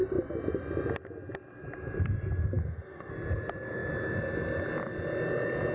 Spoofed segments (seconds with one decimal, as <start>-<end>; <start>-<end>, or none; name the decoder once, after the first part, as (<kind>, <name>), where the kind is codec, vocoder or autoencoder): 2.6-3.1 (autoencoder, DAC-VAE)